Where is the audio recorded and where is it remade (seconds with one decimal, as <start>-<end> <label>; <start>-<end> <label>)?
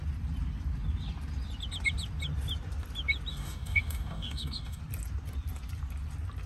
0.0-3.3 recorded; 3.3-4.8 remade; 4.8-6.5 recorded